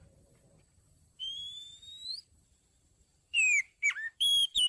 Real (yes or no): no